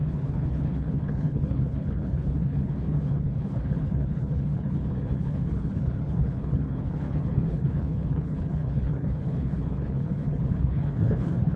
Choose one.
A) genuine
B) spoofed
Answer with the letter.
B